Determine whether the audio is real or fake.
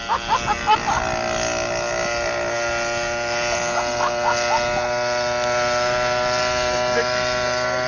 real